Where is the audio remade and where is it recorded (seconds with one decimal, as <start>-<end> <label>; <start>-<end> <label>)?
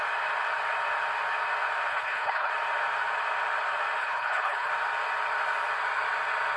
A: 0.0-1.9 recorded; 1.9-2.5 remade; 2.5-4.0 recorded; 4.0-4.7 remade; 4.7-6.6 recorded